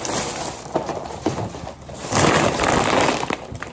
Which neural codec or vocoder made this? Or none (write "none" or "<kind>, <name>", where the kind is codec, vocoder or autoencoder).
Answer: none